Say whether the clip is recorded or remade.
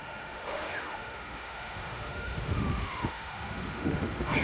remade